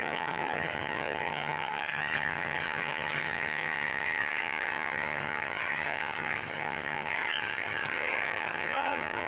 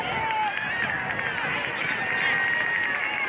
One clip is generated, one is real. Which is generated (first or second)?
first